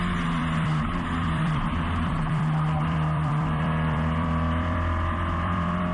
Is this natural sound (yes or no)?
no